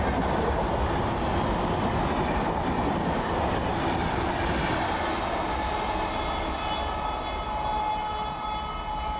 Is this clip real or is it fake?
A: real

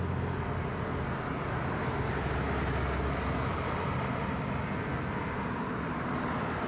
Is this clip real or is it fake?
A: real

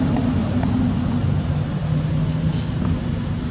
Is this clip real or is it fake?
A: real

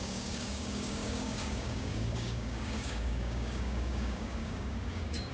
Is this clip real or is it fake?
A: fake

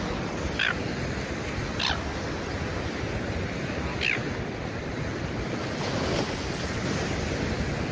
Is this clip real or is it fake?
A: real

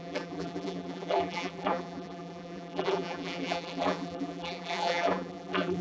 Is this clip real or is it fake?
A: fake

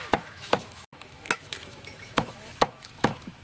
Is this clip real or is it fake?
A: fake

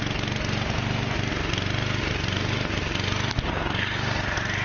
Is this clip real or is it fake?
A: real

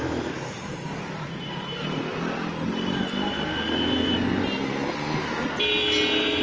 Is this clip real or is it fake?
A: real